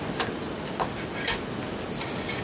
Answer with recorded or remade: recorded